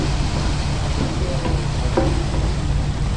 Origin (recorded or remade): recorded